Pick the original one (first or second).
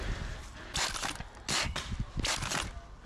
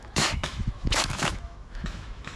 first